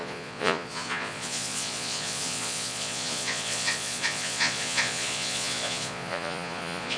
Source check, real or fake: fake